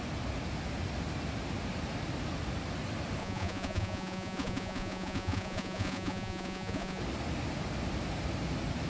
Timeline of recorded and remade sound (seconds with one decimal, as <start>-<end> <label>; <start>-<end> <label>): 0.0-3.2 recorded; 3.2-7.0 remade; 7.0-8.9 recorded